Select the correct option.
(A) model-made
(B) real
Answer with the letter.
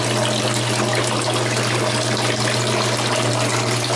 B